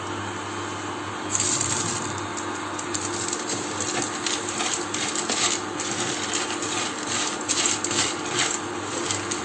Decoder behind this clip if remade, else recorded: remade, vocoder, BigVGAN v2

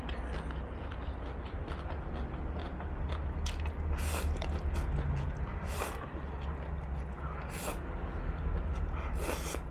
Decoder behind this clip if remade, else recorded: recorded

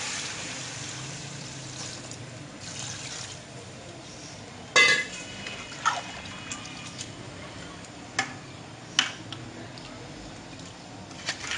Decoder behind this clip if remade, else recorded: recorded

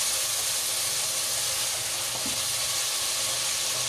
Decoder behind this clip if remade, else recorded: recorded